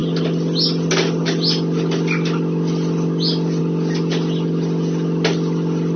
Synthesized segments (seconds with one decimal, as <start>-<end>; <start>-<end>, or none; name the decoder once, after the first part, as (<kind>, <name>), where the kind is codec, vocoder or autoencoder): none